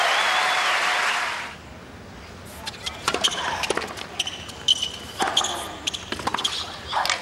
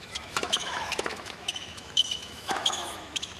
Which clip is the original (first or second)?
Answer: first